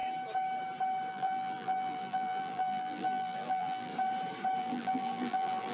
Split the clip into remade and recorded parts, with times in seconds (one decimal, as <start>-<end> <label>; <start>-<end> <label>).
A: 0.0-1.1 recorded; 1.1-3.9 remade; 3.9-4.6 recorded; 4.6-5.7 remade